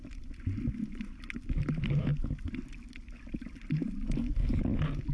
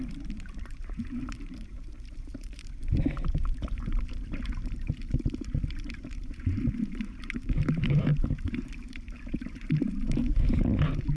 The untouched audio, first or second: first